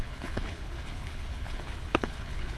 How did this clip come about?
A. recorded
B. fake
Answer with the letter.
B